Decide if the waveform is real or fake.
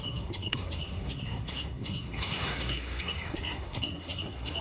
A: fake